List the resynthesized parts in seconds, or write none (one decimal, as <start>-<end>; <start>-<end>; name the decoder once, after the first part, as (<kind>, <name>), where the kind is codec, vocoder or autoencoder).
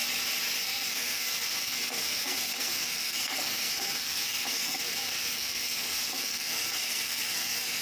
0.6-7.8 (codec, SNAC)